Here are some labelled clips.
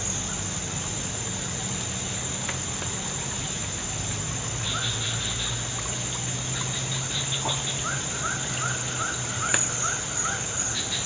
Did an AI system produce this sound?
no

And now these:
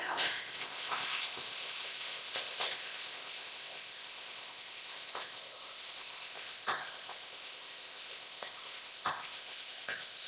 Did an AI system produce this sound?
yes